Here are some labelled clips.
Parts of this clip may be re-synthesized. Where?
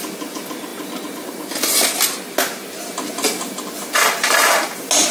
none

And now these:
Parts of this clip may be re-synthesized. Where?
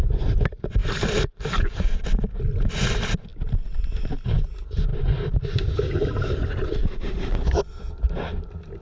0.8-2.1 (vocoder, BigVGAN v2); 4.9-8.2